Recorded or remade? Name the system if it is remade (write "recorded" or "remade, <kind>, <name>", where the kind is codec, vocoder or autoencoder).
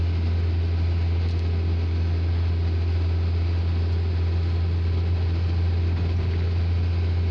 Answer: recorded